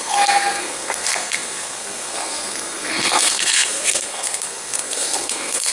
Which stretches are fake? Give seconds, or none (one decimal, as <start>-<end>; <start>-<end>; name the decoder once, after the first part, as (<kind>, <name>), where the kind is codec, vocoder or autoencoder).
0.0-5.7 (codec, SNAC)